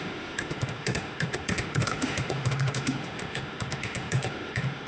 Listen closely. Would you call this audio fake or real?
fake